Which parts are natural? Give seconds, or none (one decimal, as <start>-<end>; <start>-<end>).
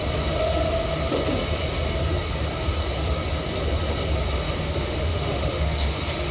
0.0-4.8